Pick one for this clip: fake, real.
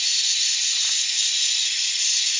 fake